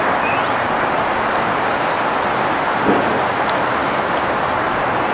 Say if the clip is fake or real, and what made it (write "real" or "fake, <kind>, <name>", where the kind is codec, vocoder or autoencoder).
real